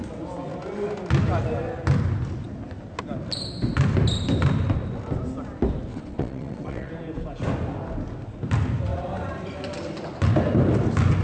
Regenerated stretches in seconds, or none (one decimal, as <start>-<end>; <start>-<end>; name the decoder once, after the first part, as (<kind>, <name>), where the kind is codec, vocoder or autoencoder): 5.9-6.9 (vocoder, WaveNeXt)